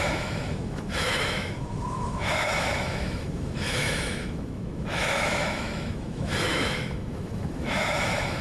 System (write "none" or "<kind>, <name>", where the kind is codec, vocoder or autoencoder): autoencoder, DAC-VAE